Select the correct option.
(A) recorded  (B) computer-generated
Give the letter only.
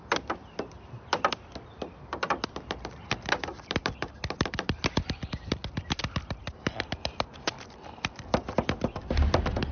B